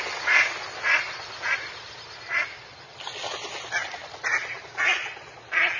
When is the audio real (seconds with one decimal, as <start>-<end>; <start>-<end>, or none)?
0.0-5.8